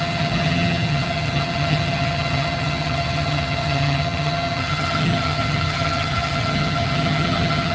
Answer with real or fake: fake